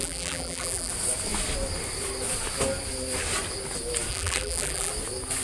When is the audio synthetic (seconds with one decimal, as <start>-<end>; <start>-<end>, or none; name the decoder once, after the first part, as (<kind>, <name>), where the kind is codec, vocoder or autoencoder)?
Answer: 0.0-0.9 (vocoder, BigVGAN v2); 4.1-4.9